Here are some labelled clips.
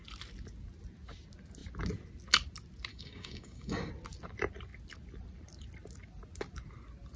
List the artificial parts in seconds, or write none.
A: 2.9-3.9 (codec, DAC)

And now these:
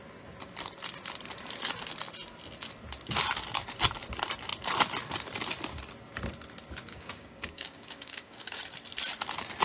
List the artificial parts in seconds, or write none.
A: 6.9-8.6 (codec, DAC)

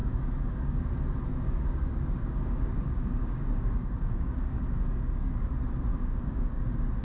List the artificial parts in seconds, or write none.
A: 0.0-0.9 (codec, DAC); 1.3-5.5; 5.9-6.6

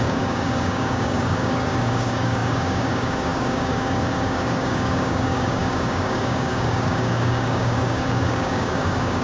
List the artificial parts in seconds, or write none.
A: 0.0-9.2 (codec, DAC)

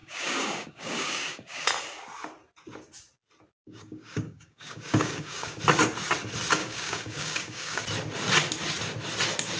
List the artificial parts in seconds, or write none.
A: 0.0-1.7 (codec, DAC); 3.6-5.6; 6.6-7.8

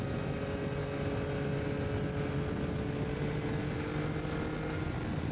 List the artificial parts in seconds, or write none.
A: none